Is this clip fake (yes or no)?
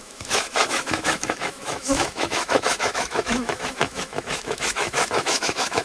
yes